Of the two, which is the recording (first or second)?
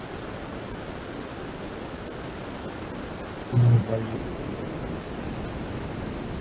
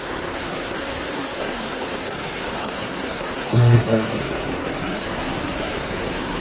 first